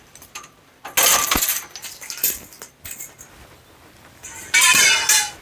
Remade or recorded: recorded